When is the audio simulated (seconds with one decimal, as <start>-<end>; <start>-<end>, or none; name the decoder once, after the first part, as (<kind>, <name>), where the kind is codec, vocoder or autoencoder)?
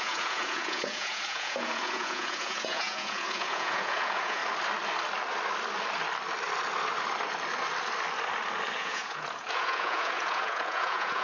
0.0-4.4 (vocoder, Vocos); 8.8-11.2